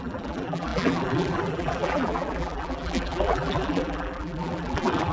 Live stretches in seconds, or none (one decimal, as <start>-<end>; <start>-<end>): none